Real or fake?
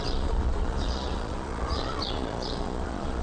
fake